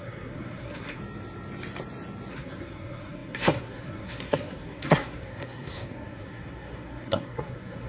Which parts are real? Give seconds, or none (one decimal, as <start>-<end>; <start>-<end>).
1.0-2.3